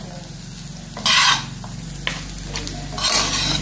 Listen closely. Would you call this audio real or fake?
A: real